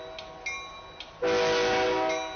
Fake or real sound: real